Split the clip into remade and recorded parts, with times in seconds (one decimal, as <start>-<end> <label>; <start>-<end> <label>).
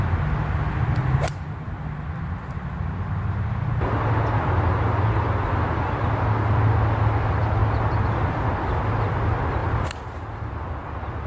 0.0-11.3 recorded